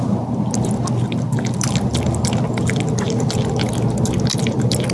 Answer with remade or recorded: recorded